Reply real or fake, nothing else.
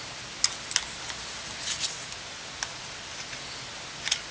real